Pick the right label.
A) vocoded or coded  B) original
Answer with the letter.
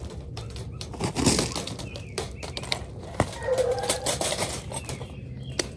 B